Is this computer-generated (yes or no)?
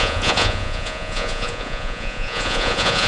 yes